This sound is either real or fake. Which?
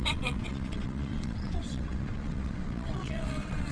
fake